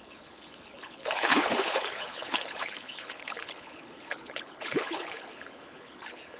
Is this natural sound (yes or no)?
no